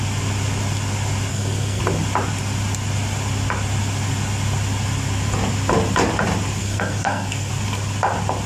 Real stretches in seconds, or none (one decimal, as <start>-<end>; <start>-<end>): 0.0-1.3; 1.8-6.6; 7.5-8.5